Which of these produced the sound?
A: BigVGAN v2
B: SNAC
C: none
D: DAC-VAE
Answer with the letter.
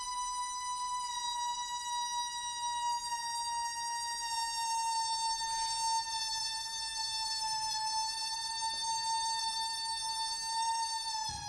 C